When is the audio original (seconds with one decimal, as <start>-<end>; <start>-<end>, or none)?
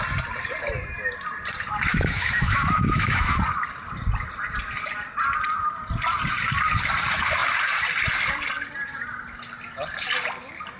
0.0-1.9; 3.4-10.8